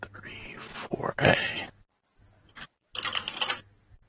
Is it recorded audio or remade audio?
recorded